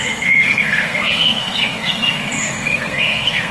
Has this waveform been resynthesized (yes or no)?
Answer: yes